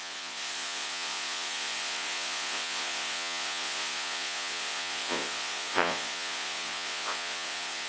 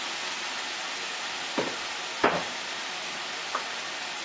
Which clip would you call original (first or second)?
second